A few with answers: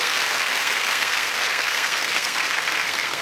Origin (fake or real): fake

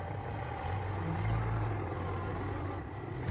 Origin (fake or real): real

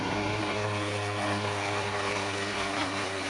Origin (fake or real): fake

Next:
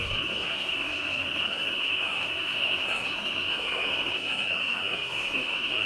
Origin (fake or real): fake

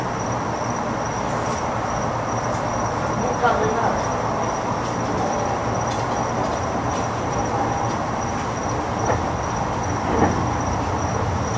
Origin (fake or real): real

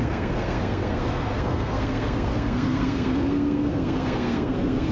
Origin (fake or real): fake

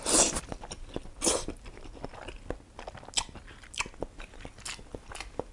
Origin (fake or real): real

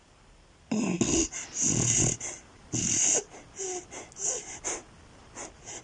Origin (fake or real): real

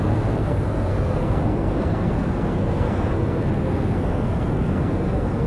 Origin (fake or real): fake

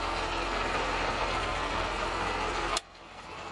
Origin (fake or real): fake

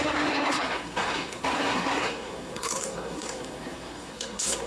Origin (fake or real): fake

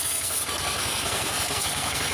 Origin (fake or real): fake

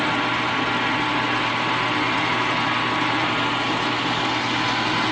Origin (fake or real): real